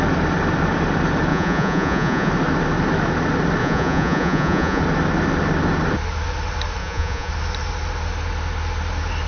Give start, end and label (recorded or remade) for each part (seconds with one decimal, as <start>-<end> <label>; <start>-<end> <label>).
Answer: 0.0-1.3 recorded; 1.3-2.3 remade; 2.3-3.6 recorded; 3.6-4.8 remade; 4.8-6.8 recorded; 6.8-7.3 remade; 7.3-9.3 recorded